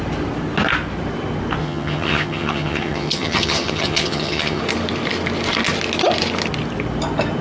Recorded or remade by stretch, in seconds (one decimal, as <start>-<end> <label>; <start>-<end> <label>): 0.0-1.6 recorded; 1.6-4.6 remade; 4.6-7.4 recorded